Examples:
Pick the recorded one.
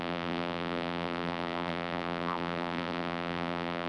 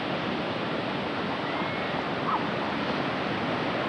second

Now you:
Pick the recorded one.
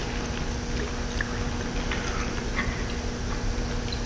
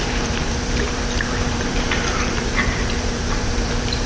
first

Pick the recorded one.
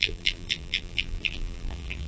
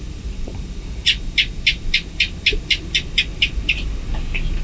second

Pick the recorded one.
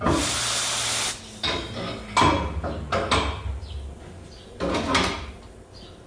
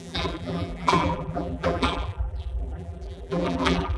first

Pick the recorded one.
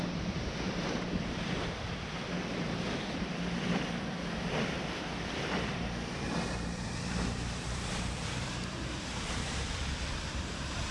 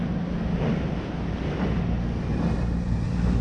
second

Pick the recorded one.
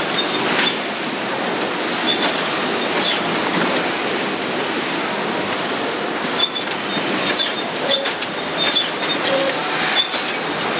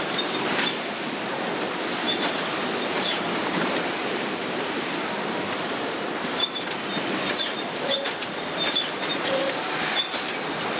first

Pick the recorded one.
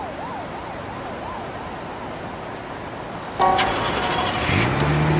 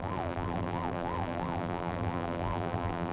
first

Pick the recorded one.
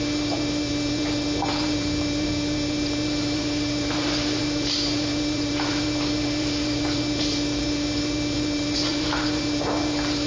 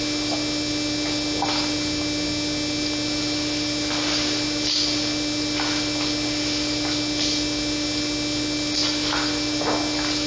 second